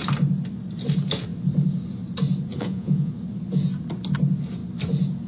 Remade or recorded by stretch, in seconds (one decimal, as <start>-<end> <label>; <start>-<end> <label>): 0.0-2.5 recorded; 2.5-3.1 remade; 3.1-5.3 recorded